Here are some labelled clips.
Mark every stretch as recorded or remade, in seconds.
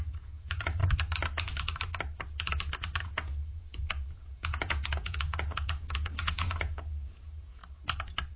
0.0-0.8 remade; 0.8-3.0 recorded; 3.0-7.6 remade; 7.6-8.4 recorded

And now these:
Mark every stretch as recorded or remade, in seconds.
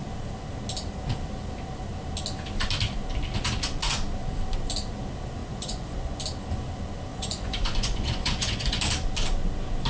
0.0-5.4 recorded; 5.4-6.2 remade; 6.2-7.1 recorded; 7.1-8.8 remade; 8.8-9.9 recorded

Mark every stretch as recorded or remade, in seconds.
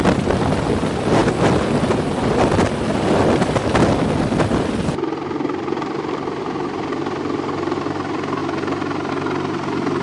0.0-10.0 recorded